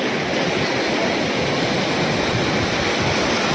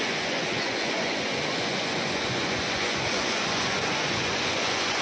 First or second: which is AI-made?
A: second